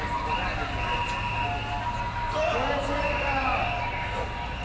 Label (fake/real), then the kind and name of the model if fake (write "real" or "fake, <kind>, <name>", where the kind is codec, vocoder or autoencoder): real